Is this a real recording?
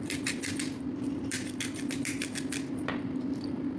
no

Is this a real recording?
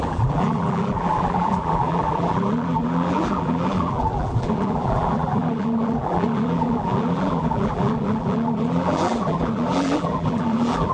no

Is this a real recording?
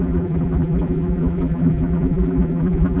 no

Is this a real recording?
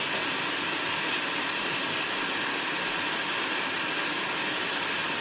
yes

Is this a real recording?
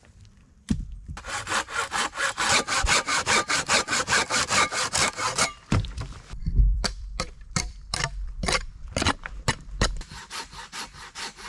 no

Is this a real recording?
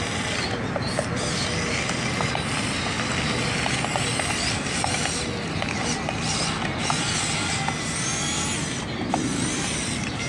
yes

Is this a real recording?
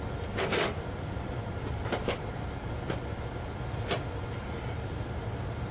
yes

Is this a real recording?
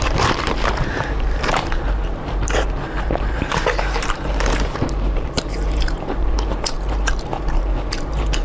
no